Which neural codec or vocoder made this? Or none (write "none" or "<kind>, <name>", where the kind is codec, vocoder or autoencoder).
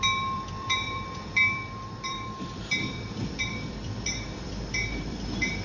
vocoder, BigVGAN v2